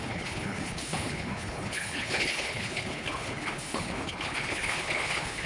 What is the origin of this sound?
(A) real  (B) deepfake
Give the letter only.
B